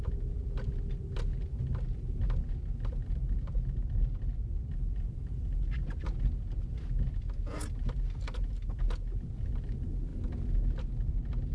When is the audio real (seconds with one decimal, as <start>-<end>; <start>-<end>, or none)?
0.0-11.5